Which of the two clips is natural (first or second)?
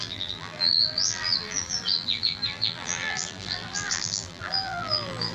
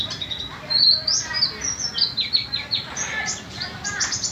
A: second